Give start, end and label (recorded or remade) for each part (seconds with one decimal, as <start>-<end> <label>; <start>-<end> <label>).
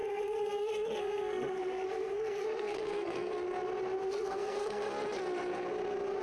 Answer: 0.0-3.3 remade; 3.3-4.0 recorded; 4.0-4.9 remade; 4.9-6.2 recorded